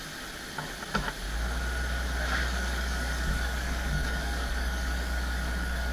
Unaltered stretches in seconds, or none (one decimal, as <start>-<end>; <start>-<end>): 0.0-2.4